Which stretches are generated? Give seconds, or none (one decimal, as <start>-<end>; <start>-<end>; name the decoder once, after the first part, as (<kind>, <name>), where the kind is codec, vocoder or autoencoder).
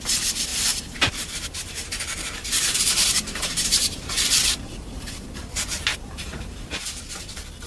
0.5-5.1 (vocoder, BigVGAN v2); 5.9-7.2